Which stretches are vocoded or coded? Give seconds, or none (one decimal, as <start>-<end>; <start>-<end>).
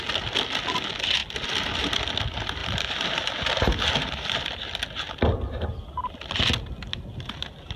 none